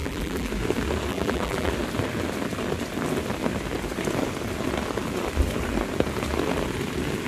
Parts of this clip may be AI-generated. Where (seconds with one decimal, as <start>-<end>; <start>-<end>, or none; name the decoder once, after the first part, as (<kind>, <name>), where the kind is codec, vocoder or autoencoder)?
0.0-0.5 (vocoder, BigVGAN v2); 1.1-1.7